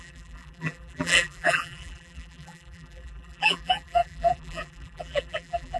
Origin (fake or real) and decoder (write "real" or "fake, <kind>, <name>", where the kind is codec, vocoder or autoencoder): fake, vocoder, BigVGAN v2